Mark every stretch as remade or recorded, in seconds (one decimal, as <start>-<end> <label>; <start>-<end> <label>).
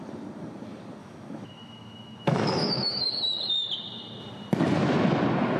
0.0-1.0 recorded; 1.0-3.1 remade; 3.1-5.6 recorded